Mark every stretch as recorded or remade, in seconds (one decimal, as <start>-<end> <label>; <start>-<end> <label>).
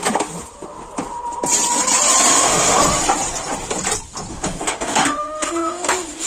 0.0-2.3 recorded; 2.3-2.8 remade; 2.8-4.3 recorded; 4.3-6.3 remade